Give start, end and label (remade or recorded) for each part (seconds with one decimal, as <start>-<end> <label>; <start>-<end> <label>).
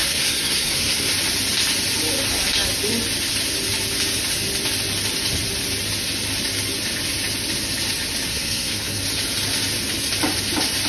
0.0-1.1 remade; 1.1-8.3 recorded; 8.3-9.0 remade; 9.0-10.9 recorded